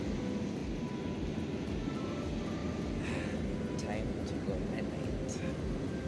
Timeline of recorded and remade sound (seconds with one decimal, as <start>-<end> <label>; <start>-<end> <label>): 0.0-6.1 recorded